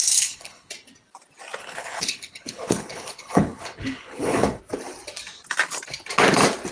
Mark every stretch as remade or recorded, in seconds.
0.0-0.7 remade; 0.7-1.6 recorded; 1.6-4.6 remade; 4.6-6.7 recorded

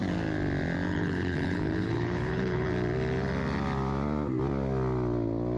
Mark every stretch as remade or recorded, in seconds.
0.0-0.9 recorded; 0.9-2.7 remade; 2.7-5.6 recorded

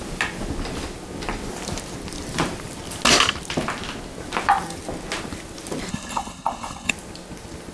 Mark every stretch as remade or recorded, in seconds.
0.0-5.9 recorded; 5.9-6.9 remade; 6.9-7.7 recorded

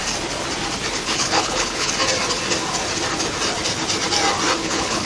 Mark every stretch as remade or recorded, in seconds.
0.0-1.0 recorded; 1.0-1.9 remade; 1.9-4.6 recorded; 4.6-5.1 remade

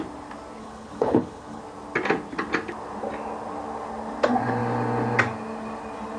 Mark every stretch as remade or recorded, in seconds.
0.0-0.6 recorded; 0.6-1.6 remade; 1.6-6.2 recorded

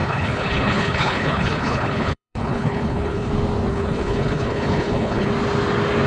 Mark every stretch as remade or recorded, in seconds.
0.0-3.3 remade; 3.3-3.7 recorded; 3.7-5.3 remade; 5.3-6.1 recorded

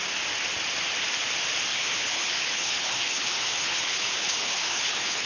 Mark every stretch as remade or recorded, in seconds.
0.0-1.7 recorded; 1.7-5.3 remade